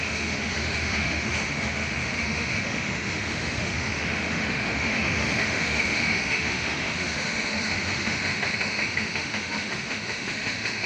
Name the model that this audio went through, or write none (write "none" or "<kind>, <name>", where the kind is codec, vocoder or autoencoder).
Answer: autoencoder, DAC-VAE